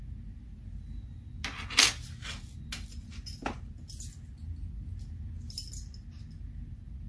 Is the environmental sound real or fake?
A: real